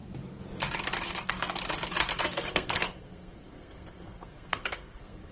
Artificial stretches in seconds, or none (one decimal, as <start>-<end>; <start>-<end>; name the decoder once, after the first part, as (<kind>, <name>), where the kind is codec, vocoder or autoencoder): 2.1-5.3 (codec, SNAC)